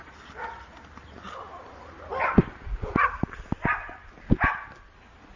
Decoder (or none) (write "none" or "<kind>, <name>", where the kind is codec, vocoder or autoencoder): none